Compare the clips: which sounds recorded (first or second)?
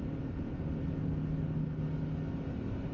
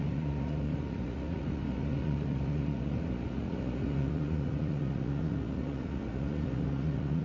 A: first